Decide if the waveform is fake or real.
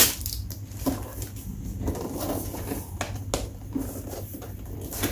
real